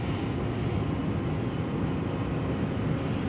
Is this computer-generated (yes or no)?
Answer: no